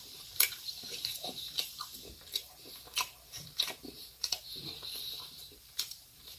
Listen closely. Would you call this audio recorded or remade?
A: remade